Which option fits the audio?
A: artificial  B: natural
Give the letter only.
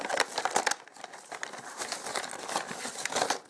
B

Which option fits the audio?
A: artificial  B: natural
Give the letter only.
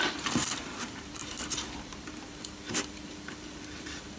A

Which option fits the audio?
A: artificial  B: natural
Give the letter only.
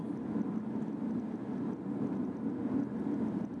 B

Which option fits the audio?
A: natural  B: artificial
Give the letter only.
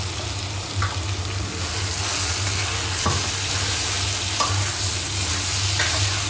A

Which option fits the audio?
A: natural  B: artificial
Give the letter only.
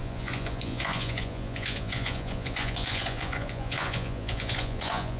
B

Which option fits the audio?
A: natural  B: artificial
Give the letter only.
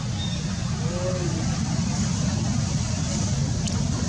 A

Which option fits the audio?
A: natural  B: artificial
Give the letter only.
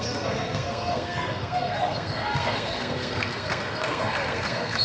B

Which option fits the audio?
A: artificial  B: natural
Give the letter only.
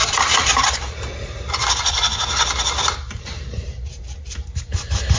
B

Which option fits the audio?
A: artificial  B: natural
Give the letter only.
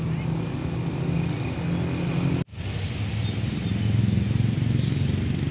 B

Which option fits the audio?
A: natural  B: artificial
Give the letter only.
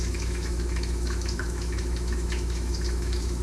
B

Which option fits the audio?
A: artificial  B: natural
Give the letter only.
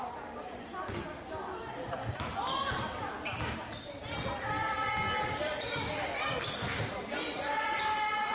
A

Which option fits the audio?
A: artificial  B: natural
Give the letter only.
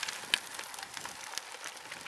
B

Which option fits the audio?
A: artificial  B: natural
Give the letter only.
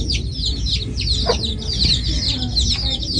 B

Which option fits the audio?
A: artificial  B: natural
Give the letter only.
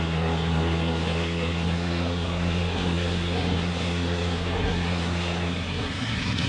A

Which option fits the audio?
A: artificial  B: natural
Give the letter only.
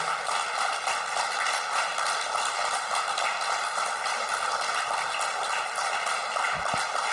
B